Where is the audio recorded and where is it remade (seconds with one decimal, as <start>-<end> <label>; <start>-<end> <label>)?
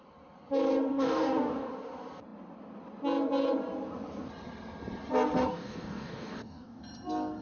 0.0-0.9 recorded; 0.9-1.7 remade; 1.7-5.4 recorded; 5.4-6.8 remade; 6.8-7.4 recorded